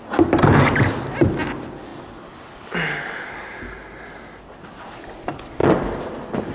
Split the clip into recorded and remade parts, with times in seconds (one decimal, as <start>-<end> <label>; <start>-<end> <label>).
0.0-6.5 recorded